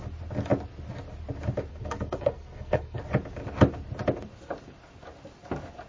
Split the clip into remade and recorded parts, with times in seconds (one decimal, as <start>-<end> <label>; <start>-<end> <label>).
0.0-1.7 recorded; 1.7-3.0 remade; 3.0-5.9 recorded